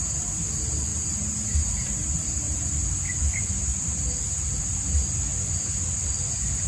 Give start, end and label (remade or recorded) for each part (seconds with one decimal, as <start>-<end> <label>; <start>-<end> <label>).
0.0-0.9 recorded; 0.9-2.7 remade; 2.7-6.7 recorded